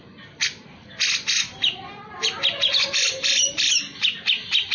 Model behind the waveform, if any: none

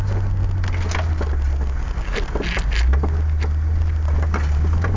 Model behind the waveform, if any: none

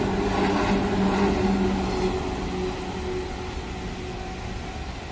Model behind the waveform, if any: none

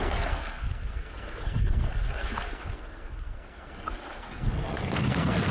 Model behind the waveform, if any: codec, SNAC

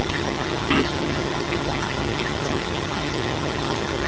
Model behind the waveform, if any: vocoder, HiFi-GAN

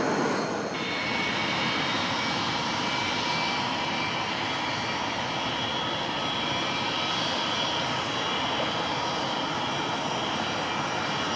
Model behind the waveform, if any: none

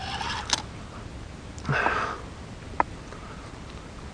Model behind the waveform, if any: none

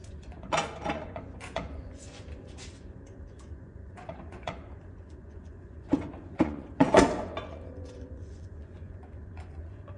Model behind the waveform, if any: vocoder, Vocos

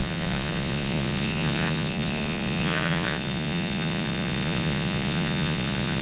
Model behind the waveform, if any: vocoder, Vocos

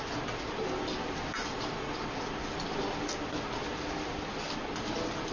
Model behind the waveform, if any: none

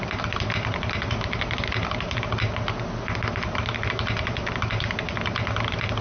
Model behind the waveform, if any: none